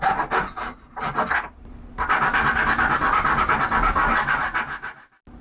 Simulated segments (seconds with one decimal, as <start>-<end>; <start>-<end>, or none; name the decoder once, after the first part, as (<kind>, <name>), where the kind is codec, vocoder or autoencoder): none